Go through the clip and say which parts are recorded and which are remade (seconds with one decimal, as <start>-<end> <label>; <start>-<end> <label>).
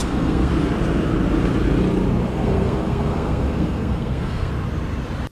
0.0-0.5 remade; 0.5-2.3 recorded; 2.3-4.5 remade; 4.5-5.3 recorded